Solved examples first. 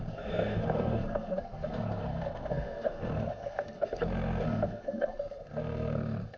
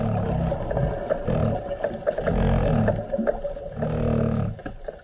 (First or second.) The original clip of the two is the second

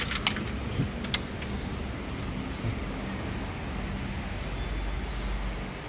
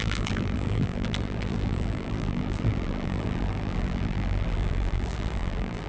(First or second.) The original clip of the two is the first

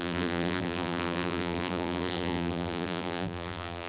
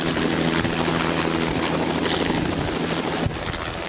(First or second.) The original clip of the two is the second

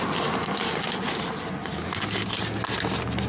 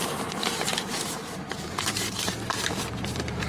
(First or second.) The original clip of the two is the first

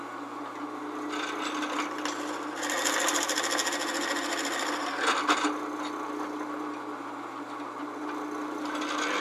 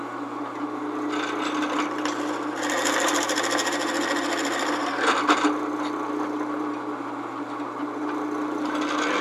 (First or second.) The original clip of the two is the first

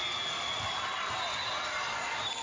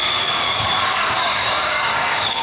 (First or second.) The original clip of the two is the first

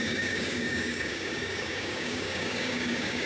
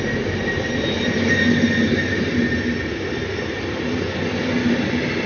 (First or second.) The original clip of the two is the second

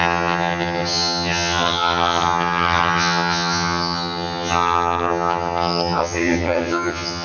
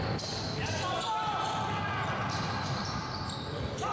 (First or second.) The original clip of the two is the second